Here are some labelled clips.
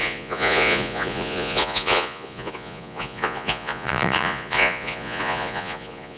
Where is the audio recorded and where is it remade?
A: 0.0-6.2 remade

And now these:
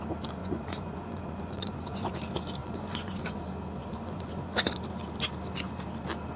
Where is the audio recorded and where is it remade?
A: 0.0-0.4 recorded; 0.4-2.1 remade; 2.1-2.6 recorded; 2.6-3.4 remade; 3.4-3.8 recorded; 3.8-4.7 remade; 4.7-6.4 recorded

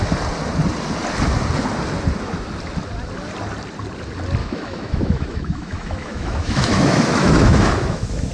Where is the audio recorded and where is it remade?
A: 0.0-4.4 recorded; 4.4-8.3 remade